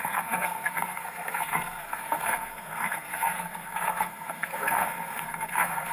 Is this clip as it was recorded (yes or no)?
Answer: no